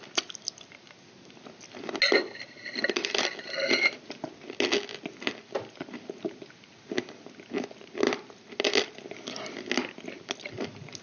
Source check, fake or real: real